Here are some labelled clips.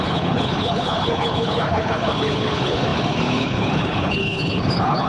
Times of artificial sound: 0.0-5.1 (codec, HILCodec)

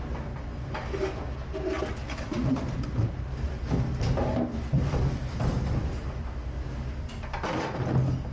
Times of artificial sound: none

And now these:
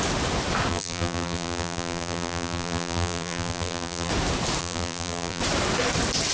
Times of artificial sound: 0.7-4.1 (vocoder, BigVGAN v2); 4.6-5.4

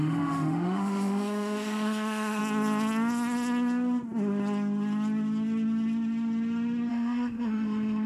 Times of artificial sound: 0.0-2.4 (autoencoder, DAC-VAE); 6.9-8.1

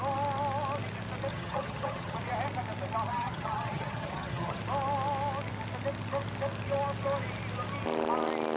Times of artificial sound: 1.3-2.2 (vocoder, HiFi-GAN); 3.1-4.6

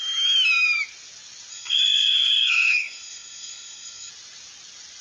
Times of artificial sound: 1.5-4.1 (codec, SNAC)

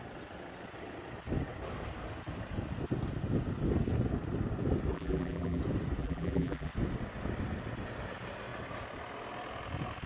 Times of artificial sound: 4.9-5.6 (vocoder, BigVGAN v2); 6.0-6.7

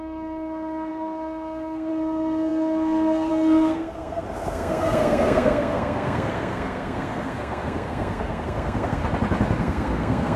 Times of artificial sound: 0.0-9.0 (codec, SNAC); 9.6-10.4